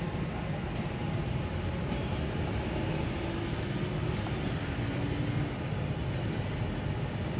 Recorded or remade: recorded